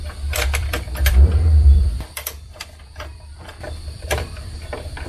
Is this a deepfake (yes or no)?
yes